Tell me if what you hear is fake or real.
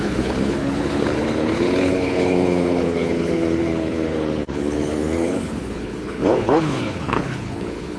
fake